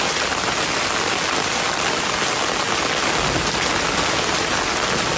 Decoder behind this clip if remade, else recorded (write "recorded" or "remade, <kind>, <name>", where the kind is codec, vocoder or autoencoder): recorded